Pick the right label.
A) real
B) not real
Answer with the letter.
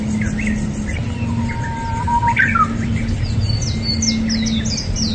A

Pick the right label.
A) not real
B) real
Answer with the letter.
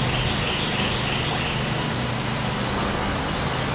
B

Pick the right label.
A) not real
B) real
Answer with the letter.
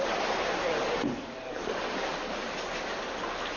B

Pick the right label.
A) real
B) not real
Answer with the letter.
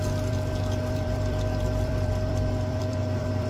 B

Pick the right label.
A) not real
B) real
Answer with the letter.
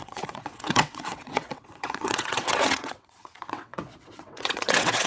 A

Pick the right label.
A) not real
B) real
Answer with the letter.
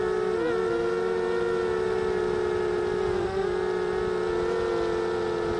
B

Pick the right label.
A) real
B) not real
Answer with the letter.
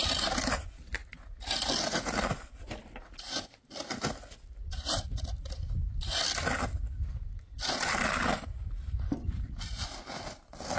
A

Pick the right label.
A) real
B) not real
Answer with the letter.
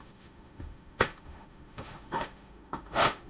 B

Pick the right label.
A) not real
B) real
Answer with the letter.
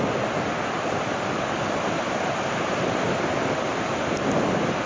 B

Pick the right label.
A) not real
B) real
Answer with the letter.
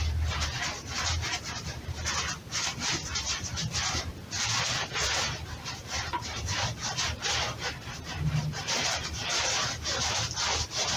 A